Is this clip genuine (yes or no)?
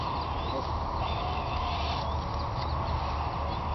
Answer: yes